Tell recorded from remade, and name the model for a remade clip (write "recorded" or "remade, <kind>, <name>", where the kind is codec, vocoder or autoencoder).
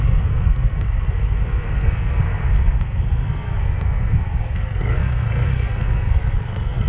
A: remade, codec, SNAC